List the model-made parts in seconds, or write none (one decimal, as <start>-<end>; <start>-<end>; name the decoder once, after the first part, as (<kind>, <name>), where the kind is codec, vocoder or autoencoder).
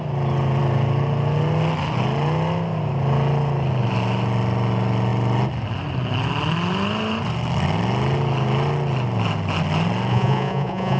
10.1-11.0 (vocoder, Vocos)